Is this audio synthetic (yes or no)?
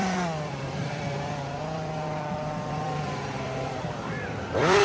yes